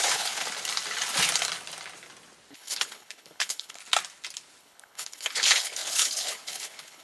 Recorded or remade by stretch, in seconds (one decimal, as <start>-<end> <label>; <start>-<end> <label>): 0.0-0.4 remade; 0.4-2.5 recorded; 2.5-3.8 remade; 3.8-4.6 recorded; 4.6-7.0 remade

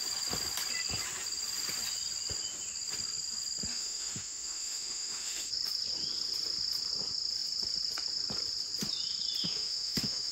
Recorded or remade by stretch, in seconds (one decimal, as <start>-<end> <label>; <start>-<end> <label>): 0.0-3.7 recorded; 3.7-5.5 remade; 5.5-9.4 recorded; 9.4-10.3 remade

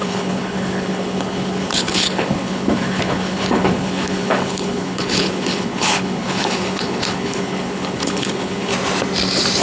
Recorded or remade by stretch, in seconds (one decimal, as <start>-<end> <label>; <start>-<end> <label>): 0.0-8.7 remade; 8.7-9.6 recorded

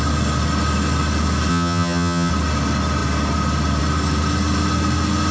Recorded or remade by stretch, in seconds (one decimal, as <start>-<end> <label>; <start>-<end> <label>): 0.0-1.5 recorded; 1.5-2.3 remade; 2.3-5.3 recorded

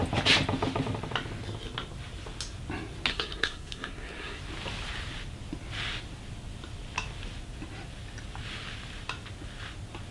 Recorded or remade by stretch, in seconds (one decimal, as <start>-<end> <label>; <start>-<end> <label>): 0.0-3.1 recorded; 3.1-4.4 remade; 4.4-10.1 recorded